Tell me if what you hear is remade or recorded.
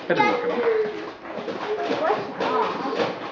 recorded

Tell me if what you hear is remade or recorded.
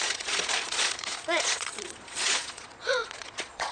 remade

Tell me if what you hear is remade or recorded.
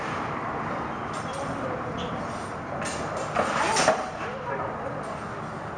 recorded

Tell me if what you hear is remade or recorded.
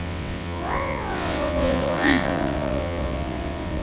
remade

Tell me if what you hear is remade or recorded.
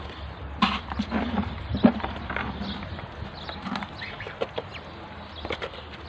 recorded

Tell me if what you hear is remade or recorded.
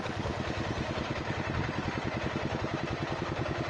remade